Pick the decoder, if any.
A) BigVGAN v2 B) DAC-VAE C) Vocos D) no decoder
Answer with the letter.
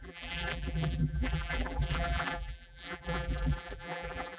A